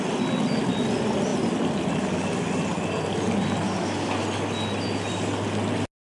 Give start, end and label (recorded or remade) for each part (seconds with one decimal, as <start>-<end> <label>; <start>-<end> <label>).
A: 0.0-6.1 recorded

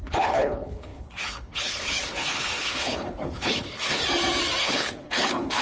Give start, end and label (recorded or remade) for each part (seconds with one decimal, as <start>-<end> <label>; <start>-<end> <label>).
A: 0.0-4.0 remade; 4.0-4.6 recorded; 4.6-5.6 remade